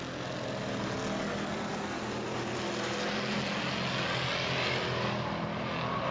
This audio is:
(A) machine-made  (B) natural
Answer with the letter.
B